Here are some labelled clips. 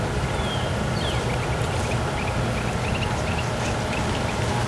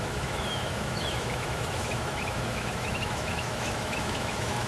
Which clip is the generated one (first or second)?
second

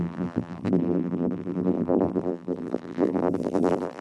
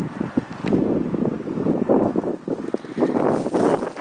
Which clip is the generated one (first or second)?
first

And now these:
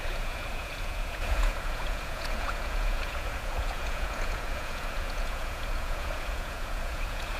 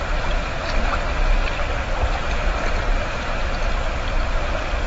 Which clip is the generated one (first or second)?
first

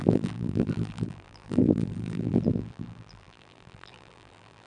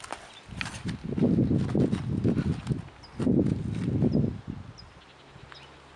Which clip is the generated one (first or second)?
first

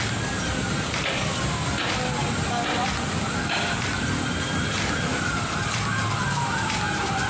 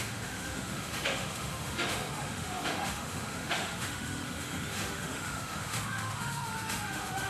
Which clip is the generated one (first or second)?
second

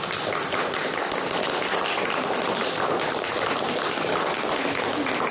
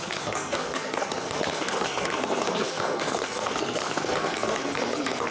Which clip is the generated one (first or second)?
second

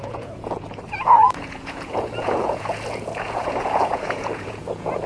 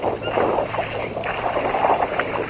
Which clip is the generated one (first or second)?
first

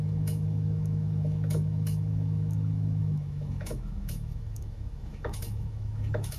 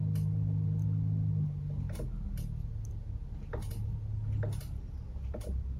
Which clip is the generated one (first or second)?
first